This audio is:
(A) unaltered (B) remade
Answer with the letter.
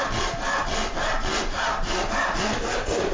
A